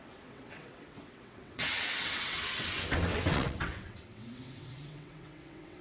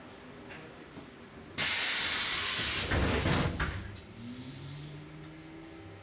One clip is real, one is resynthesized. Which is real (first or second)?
second